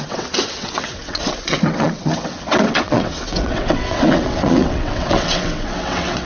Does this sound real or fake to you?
fake